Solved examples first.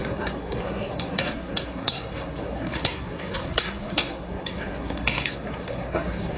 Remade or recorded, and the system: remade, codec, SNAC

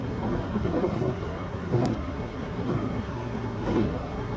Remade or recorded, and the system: remade, codec, SNAC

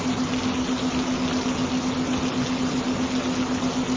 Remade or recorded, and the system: recorded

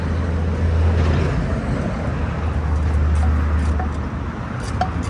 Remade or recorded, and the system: recorded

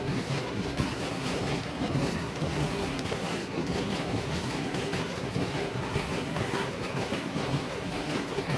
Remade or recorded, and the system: remade, codec, SNAC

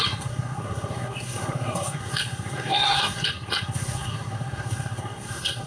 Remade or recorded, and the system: remade, codec, SNAC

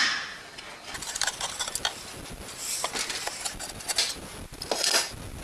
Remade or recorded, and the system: recorded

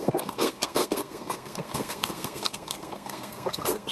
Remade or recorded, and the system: remade, codec, SNAC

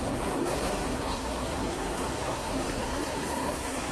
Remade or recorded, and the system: remade, codec, SNAC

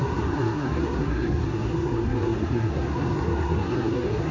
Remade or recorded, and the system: remade, codec, SNAC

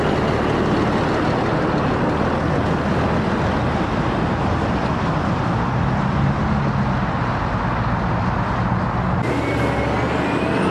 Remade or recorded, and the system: recorded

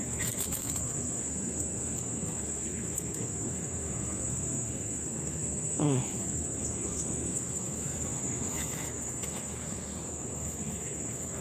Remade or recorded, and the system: remade, codec, SNAC